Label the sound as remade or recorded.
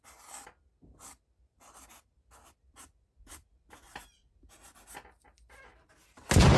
recorded